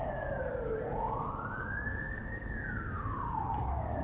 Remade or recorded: remade